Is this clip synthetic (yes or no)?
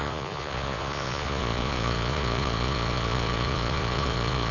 yes